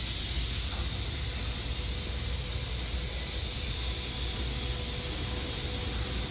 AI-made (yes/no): no